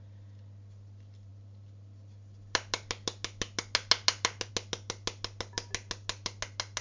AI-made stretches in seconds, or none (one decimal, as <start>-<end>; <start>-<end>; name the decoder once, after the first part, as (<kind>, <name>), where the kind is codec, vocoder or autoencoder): none